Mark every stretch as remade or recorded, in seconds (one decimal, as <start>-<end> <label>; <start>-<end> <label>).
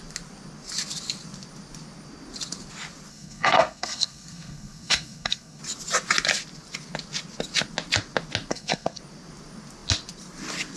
0.0-3.1 recorded; 3.1-5.6 remade; 5.6-8.5 recorded; 8.5-9.0 remade; 9.0-10.8 recorded